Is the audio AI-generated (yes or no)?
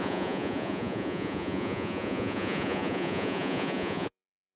yes